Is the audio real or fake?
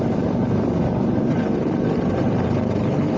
fake